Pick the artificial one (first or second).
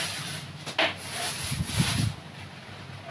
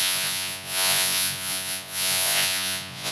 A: second